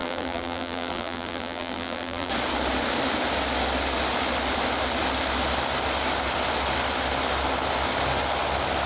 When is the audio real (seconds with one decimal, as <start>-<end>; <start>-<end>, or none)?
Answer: 2.3-8.9